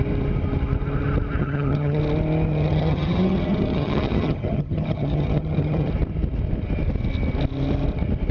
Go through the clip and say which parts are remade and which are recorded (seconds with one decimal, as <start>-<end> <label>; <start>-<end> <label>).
0.0-1.4 recorded; 1.4-2.0 remade; 2.0-2.5 recorded; 2.5-5.9 remade; 5.9-8.3 recorded